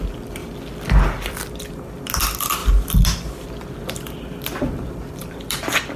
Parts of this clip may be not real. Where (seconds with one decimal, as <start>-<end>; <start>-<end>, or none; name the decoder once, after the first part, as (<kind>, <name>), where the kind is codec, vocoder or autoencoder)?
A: none